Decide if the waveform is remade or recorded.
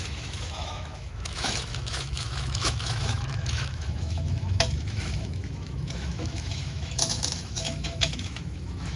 remade